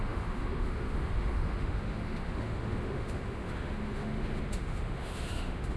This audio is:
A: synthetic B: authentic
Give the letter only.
A